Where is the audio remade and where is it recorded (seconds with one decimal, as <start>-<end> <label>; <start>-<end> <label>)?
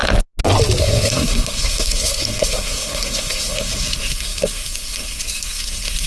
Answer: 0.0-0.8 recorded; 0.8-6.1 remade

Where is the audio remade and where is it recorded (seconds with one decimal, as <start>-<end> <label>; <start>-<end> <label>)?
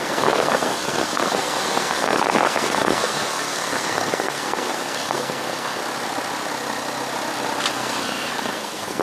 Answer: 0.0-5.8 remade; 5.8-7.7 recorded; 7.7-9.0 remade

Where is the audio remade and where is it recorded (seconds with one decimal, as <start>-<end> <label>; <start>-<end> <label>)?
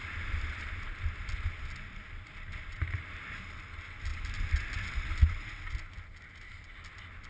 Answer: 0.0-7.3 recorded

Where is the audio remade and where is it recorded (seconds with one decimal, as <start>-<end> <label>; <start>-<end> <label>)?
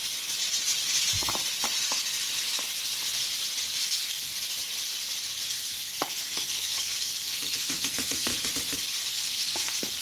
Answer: 0.0-3.8 recorded; 3.8-4.3 remade; 4.3-5.5 recorded; 5.5-8.3 remade; 8.3-9.1 recorded; 9.1-10.0 remade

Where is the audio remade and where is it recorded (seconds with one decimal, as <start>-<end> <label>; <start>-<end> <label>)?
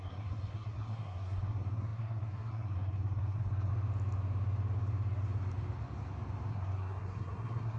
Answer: 0.0-3.7 remade; 3.7-6.5 recorded; 6.5-7.8 remade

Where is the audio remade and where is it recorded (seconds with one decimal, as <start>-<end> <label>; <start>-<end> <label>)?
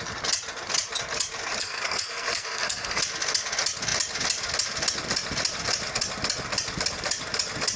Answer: 0.0-1.6 recorded; 1.6-3.0 remade; 3.0-7.8 recorded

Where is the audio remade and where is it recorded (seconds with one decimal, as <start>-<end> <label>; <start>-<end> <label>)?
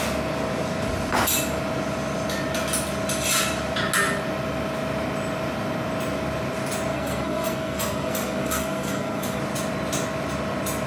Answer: 0.0-6.9 recorded; 6.9-9.4 remade; 9.4-10.9 recorded